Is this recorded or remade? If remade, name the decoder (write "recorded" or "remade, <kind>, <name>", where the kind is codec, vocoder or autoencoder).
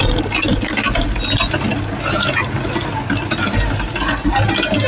recorded